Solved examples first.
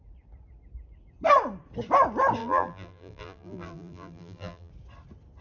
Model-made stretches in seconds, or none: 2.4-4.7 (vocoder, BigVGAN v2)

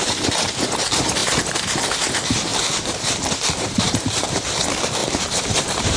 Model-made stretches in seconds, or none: 2.5-4.4 (vocoder, BigVGAN v2); 5.0-6.0

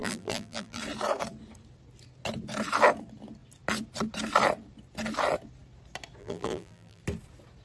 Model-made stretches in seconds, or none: 0.0-0.8 (vocoder, BigVGAN v2); 6.2-7.0

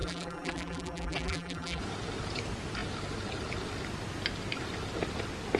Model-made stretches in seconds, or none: 0.0-1.8 (vocoder, BigVGAN v2)

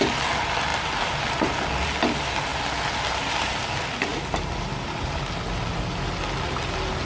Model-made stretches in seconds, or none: 0.7-1.3 (vocoder, BigVGAN v2); 4.1-5.3

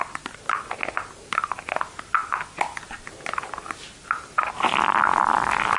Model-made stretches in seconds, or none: none